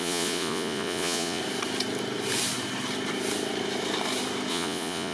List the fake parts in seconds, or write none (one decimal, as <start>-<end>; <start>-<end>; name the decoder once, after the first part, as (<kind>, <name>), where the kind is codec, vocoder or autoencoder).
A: 0.0-1.4 (vocoder, Vocos); 4.5-5.1

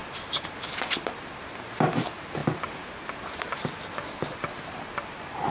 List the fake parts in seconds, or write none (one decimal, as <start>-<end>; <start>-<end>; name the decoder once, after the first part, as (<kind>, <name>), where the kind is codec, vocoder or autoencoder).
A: none

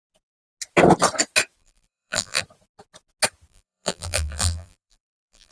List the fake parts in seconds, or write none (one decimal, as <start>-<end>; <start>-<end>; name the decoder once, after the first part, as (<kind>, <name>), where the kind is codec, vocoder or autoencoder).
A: 1.6-2.4 (vocoder, BigVGAN v2); 3.5-5.5

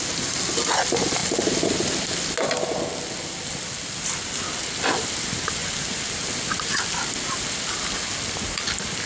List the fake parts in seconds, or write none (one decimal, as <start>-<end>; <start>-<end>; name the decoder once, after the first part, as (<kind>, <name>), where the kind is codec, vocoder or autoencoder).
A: none

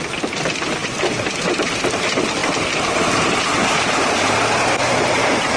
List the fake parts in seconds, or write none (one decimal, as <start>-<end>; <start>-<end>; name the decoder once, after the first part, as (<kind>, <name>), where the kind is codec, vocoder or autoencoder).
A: 0.0-5.6 (vocoder, BigVGAN v2)